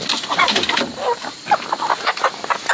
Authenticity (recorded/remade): recorded